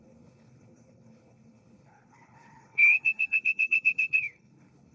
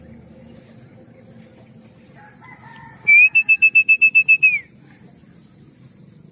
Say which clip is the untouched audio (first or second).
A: second